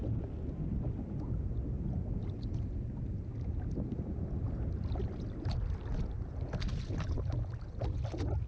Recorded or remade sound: recorded